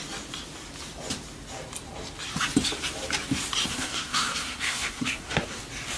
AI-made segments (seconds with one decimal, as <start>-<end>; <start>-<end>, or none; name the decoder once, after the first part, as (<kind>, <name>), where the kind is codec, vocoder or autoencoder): 3.7-5.6 (codec, SNAC)